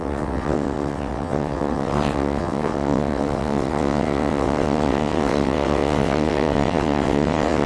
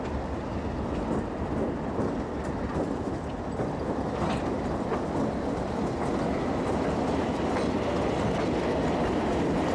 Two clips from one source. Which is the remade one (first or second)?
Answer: first